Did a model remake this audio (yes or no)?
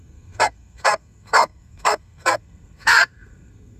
yes